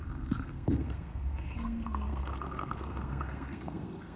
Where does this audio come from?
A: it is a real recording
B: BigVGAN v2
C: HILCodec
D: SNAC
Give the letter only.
D